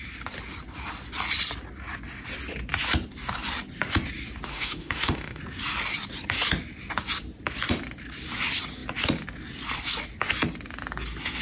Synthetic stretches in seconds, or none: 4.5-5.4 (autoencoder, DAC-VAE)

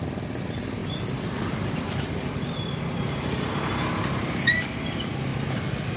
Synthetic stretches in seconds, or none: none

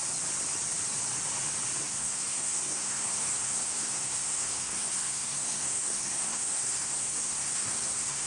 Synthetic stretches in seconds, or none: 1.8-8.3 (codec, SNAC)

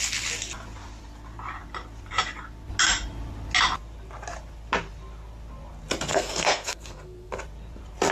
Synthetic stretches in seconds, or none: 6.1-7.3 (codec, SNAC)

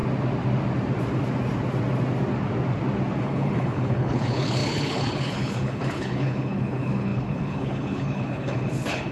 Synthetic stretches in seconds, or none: 3.2-9.1 (codec, HILCodec)